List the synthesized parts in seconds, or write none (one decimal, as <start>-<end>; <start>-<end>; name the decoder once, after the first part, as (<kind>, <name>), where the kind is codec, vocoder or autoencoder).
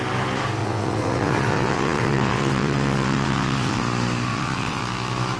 0.6-3.8 (vocoder, WaveNeXt); 4.3-4.8